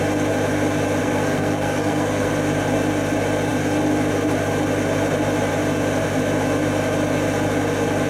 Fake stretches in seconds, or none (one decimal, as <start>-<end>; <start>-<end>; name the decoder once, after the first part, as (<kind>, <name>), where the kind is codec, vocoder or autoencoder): 1.0-2.3 (codec, SNAC)